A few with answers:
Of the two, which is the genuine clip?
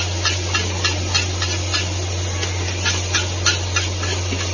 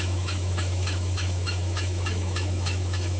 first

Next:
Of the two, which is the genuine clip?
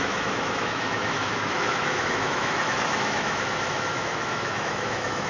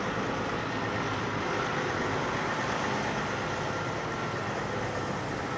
second